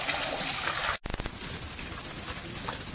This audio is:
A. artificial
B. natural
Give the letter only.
B